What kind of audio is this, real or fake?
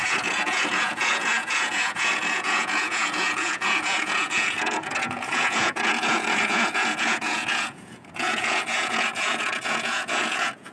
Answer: fake